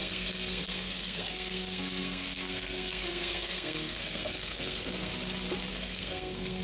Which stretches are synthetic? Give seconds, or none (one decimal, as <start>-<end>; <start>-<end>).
0.0-5.1; 5.7-6.6